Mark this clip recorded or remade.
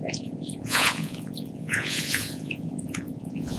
remade